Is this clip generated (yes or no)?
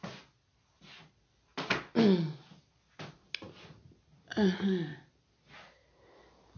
no